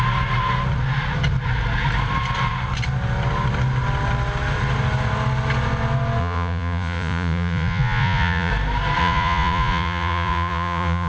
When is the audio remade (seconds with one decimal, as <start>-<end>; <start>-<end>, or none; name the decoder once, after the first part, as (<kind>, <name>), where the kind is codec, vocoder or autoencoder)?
6.2-8.5 (vocoder, Vocos); 9.0-11.1

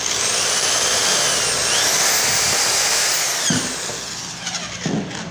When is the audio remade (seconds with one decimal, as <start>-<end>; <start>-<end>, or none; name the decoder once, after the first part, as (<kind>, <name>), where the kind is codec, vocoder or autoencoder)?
none